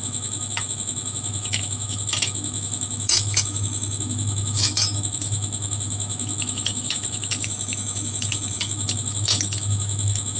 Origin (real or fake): fake